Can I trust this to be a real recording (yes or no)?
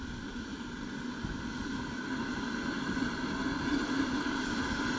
yes